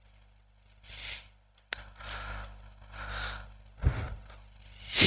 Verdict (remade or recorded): recorded